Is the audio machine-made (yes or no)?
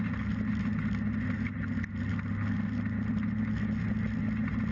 no